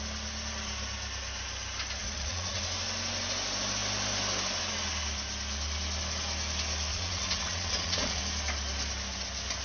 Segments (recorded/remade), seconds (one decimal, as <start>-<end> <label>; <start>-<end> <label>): 0.0-2.0 recorded; 2.0-2.6 remade; 2.6-6.9 recorded; 6.9-8.2 remade; 8.2-9.6 recorded